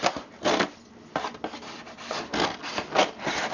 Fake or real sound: real